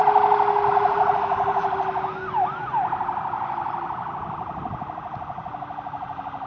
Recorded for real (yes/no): yes